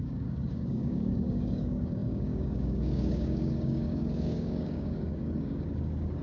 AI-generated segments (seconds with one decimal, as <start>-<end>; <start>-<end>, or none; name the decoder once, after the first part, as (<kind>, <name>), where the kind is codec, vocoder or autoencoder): 0.0-6.2 (codec, DAC)